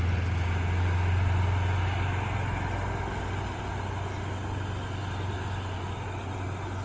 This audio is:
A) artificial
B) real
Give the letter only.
B